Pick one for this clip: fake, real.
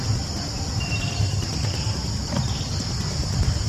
real